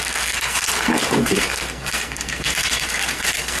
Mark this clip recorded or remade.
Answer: remade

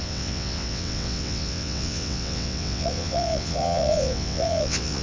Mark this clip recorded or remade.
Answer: remade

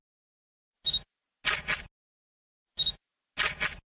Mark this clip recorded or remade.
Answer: recorded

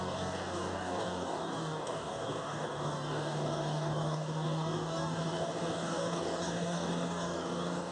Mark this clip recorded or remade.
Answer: remade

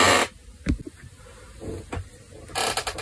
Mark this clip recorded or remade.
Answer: recorded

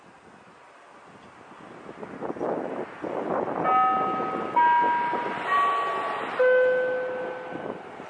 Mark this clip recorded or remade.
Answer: recorded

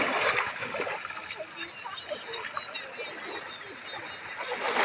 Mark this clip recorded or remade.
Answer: recorded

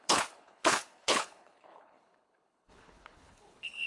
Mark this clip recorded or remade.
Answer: remade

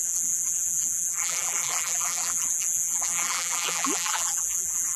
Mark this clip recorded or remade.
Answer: remade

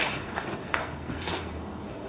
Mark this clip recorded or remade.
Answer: remade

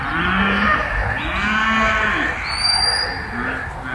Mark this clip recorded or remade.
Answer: recorded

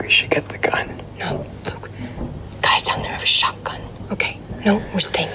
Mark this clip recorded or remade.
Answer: recorded